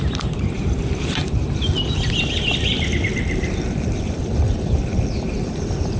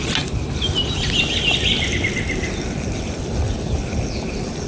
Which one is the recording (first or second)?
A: second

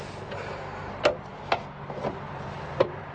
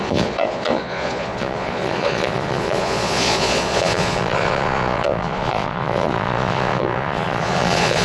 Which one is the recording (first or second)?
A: first